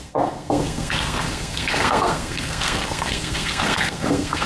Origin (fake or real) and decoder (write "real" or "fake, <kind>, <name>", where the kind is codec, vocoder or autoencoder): fake, codec, SNAC